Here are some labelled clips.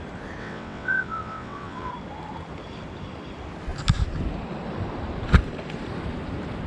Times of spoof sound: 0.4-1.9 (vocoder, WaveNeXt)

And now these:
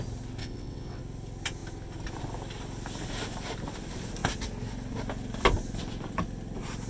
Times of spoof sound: 0.4-1.0 (vocoder, WaveNeXt)

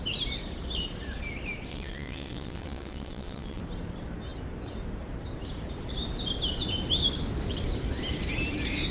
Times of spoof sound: 1.7-3.6 (vocoder, WaveNeXt)

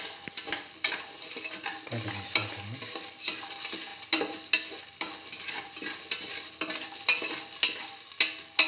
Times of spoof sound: none

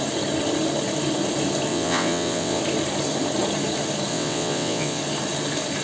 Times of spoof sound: 1.7-2.6 (vocoder, WaveNeXt); 4.1-5.0